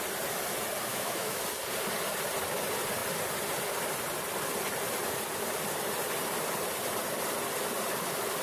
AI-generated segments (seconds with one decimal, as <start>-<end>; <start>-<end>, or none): 0.9-1.4